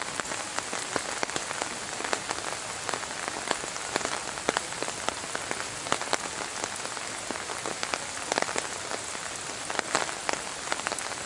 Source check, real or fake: real